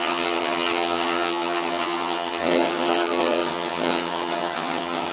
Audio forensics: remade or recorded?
remade